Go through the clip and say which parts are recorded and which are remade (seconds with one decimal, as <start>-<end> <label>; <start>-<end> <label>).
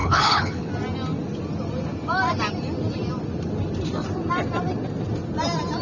0.0-0.7 remade; 0.7-5.8 recorded